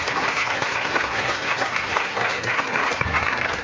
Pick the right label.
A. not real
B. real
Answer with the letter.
A